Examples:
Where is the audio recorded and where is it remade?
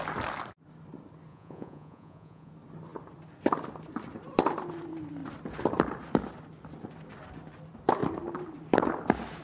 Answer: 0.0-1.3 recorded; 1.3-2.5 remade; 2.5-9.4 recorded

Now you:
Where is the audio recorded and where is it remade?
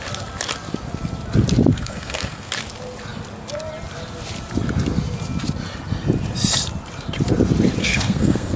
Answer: 0.0-1.7 recorded; 1.7-2.5 remade; 2.5-7.8 recorded; 7.8-8.6 remade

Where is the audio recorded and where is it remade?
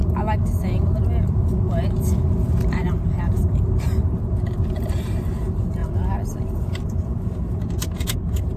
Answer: 0.0-2.6 recorded; 2.6-5.8 remade; 5.8-6.4 recorded; 6.4-8.6 remade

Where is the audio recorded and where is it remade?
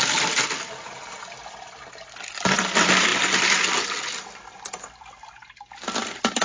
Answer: 0.0-6.4 recorded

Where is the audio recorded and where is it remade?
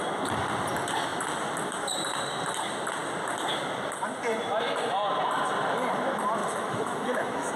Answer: 0.0-6.4 recorded; 6.4-7.6 remade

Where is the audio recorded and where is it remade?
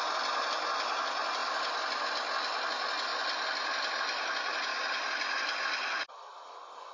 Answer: 0.0-6.9 recorded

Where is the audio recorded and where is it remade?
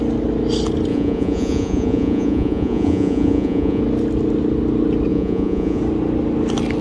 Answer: 0.0-0.9 recorded; 0.9-3.8 remade; 3.8-5.1 recorded; 5.1-5.8 remade; 5.8-6.8 recorded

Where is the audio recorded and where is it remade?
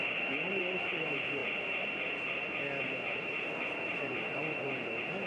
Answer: 0.0-1.4 remade; 1.4-2.8 recorded; 2.8-5.3 remade